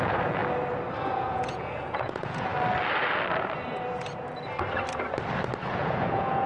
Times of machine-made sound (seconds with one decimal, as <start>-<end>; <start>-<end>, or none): 0.0-0.4; 1.0-2.5; 5.7-6.5